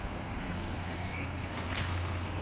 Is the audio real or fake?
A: fake